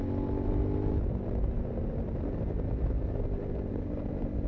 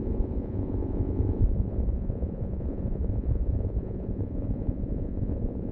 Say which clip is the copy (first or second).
second